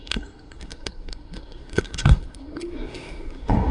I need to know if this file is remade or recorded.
remade